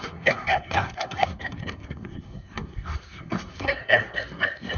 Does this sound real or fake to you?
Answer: fake